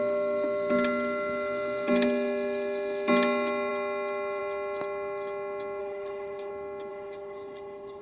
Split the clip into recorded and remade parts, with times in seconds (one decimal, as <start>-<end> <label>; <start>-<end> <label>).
0.0-5.8 recorded; 5.8-6.5 remade; 6.5-6.9 recorded; 6.9-8.0 remade